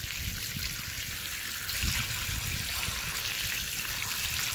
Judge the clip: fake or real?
real